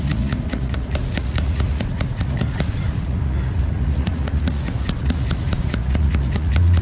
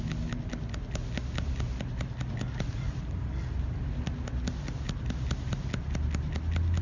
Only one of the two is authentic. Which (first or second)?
second